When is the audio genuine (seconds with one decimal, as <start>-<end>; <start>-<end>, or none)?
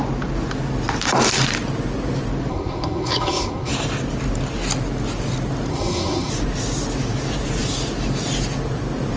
0.0-2.5; 3.7-5.7; 6.3-9.2